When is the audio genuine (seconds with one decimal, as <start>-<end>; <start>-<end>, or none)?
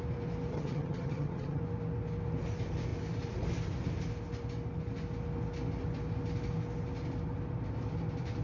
0.0-0.5; 1.6-8.4